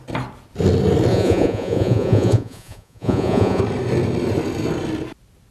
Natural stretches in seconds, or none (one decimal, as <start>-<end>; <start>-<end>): 0.0-1.1; 3.6-5.5